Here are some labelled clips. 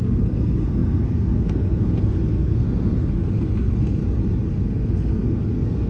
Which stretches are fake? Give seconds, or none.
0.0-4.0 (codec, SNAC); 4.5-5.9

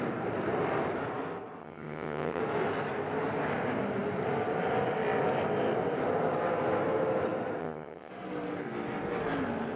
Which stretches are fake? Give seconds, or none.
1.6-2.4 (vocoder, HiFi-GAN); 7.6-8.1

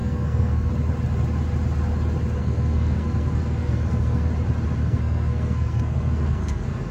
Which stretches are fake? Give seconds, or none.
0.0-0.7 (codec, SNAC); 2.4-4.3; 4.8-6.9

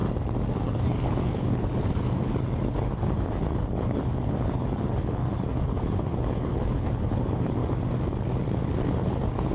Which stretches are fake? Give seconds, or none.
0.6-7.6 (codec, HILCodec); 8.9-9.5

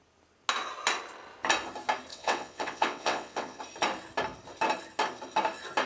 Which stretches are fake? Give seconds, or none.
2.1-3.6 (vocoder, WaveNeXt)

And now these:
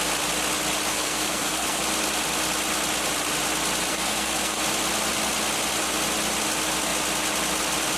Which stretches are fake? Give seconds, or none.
0.9-1.8 (codec, SNAC); 3.9-4.6

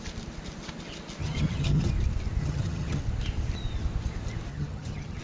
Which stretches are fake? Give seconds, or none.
1.2-1.9 (vocoder, HiFi-GAN); 2.4-3.0; 4.5-5.2

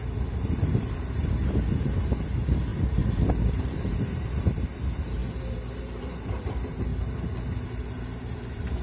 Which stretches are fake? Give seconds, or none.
0.0-5.2 (vocoder, BigVGAN v2); 5.8-6.9; 7.9-8.8